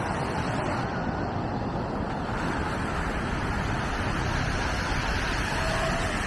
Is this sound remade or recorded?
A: recorded